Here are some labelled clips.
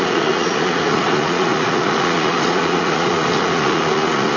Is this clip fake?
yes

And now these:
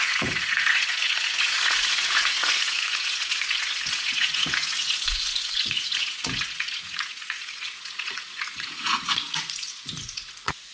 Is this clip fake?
yes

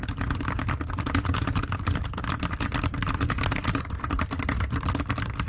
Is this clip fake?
no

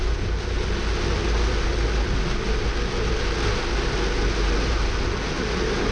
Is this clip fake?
no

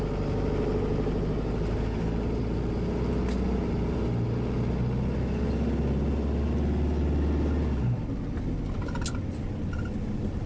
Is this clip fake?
no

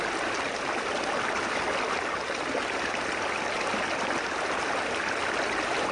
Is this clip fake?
no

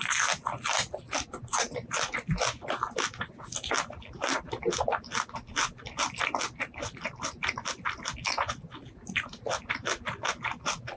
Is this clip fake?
no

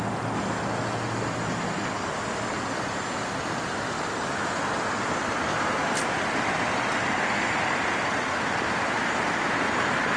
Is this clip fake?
no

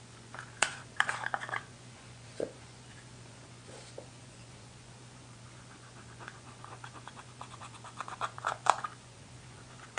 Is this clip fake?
yes